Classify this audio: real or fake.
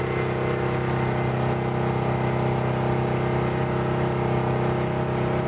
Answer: real